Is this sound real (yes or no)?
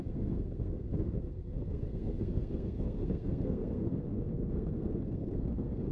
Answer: no